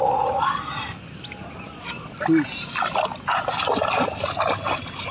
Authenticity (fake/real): real